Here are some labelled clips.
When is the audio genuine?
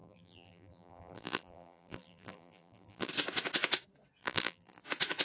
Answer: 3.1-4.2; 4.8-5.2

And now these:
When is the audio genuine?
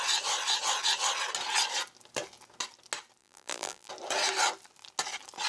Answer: 0.0-3.2; 3.9-5.5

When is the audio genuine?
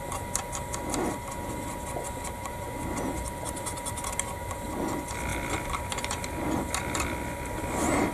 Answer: 0.0-5.3; 7.6-8.1